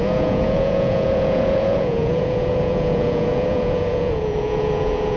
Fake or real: fake